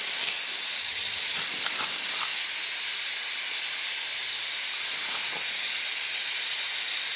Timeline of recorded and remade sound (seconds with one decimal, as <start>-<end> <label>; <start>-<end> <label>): 0.0-0.8 recorded; 0.8-1.4 remade; 1.4-7.2 recorded